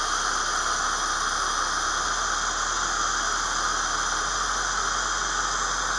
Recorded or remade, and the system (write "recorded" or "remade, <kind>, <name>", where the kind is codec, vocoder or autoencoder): recorded